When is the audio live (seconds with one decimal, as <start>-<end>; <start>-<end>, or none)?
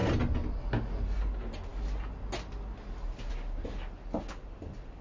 0.0-5.0